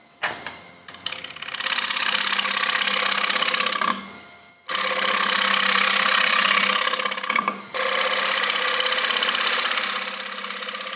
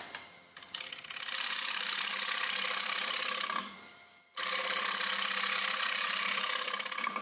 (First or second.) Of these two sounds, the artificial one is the second